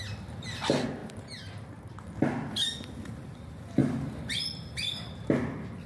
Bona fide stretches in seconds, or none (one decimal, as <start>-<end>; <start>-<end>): 0.0-1.0; 1.8-5.9